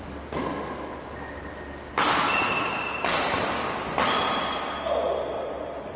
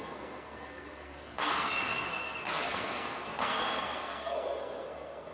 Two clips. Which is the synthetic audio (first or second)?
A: second